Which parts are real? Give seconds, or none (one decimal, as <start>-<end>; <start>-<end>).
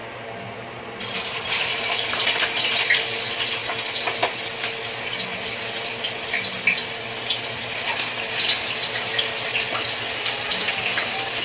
2.2-11.4